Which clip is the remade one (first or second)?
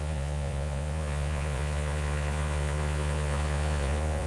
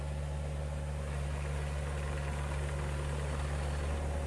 first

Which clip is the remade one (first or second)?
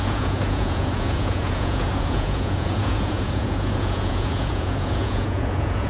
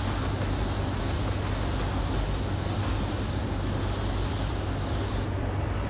first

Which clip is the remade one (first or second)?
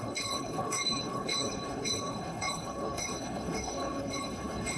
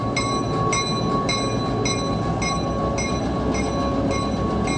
first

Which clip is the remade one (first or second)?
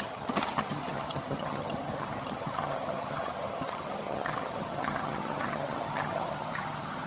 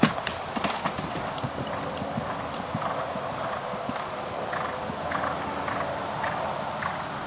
first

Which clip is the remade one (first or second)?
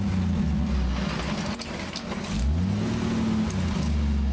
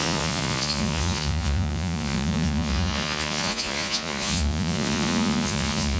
second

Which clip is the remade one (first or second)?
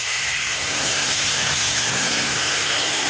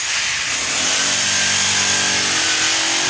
first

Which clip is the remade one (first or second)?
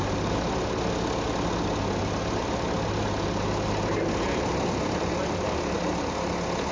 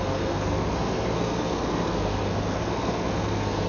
second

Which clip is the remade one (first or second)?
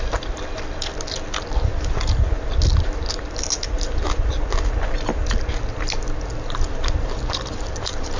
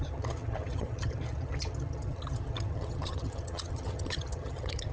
second